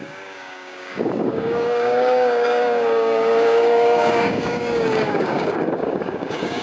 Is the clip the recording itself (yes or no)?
no